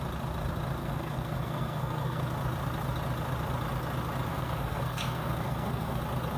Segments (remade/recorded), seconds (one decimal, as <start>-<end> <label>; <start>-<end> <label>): 0.0-0.8 recorded; 0.8-2.2 remade; 2.2-4.3 recorded; 4.3-6.0 remade; 6.0-6.4 recorded